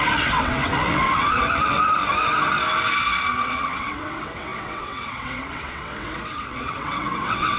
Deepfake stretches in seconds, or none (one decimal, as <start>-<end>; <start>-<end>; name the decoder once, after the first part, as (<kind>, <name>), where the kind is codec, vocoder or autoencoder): 0.0-2.0 (vocoder, WaveNeXt); 3.4-7.6